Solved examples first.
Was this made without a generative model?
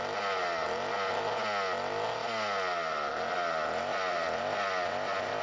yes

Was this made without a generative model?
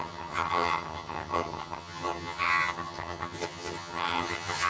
no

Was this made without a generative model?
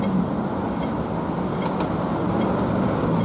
yes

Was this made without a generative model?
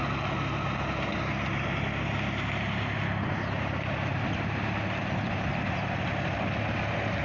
yes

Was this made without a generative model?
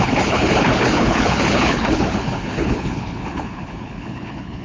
no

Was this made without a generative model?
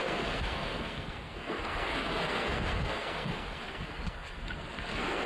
no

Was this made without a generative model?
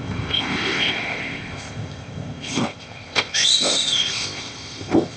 no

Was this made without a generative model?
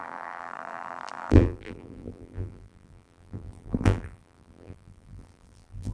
no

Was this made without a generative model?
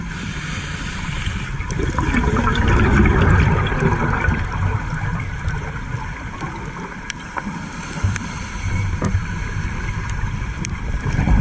no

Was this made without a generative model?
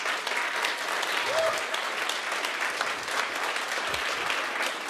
yes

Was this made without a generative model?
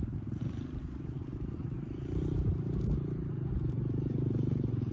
yes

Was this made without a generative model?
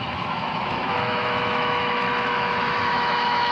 no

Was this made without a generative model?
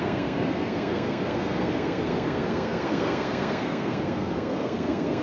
no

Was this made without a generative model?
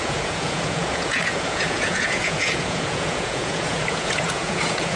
no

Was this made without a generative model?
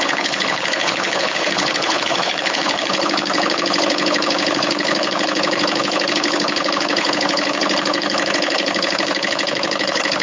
no